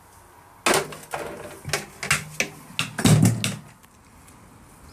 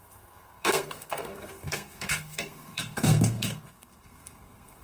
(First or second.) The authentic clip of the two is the first